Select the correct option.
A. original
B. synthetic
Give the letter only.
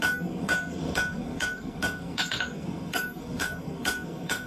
B